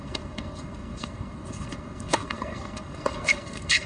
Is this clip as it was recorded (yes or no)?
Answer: no